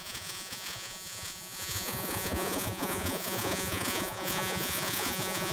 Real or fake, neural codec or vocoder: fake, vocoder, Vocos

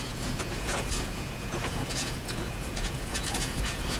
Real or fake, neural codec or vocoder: fake, vocoder, Vocos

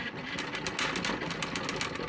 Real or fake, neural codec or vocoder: real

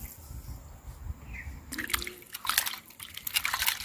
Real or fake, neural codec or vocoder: real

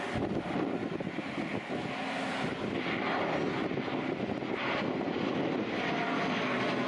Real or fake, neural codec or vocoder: real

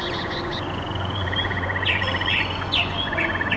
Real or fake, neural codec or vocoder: fake, vocoder, Vocos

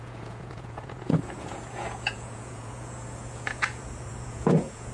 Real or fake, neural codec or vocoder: fake, vocoder, Vocos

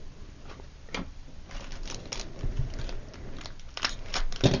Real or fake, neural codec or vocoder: real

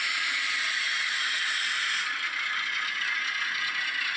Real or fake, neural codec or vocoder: real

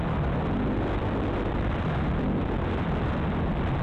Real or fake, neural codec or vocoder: real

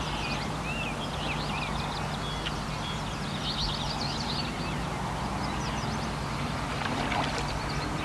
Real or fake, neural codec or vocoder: real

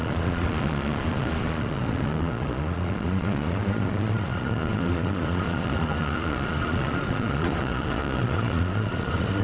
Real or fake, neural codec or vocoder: fake, vocoder, Vocos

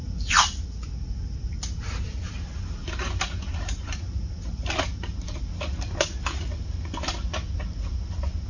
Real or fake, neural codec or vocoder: real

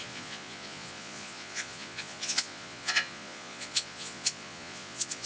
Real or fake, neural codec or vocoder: fake, vocoder, Vocos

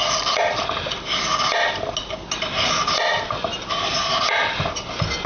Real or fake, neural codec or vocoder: real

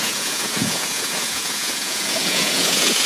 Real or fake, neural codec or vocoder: fake, vocoder, Vocos